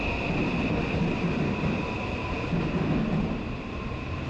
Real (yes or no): yes